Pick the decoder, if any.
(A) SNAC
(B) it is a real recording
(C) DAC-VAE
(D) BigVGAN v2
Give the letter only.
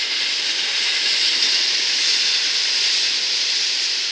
D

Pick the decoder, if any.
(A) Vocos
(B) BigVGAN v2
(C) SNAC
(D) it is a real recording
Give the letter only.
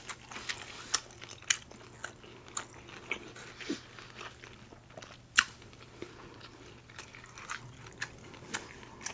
D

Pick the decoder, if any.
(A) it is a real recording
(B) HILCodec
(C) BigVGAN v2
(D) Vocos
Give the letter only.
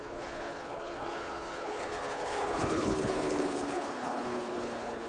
B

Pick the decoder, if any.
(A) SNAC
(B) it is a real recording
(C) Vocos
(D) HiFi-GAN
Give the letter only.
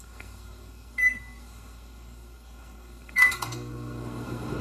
A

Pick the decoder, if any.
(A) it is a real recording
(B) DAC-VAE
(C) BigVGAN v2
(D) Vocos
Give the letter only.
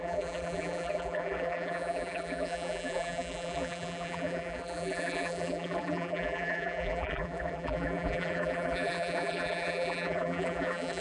C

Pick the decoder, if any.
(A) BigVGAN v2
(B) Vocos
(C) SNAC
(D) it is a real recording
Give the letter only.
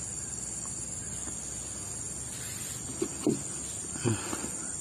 D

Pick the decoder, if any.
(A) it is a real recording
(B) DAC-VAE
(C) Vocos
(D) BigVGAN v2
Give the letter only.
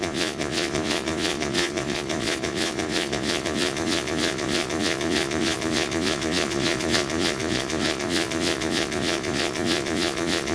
C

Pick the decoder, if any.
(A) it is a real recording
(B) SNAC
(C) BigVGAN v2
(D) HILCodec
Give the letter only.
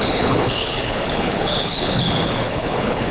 D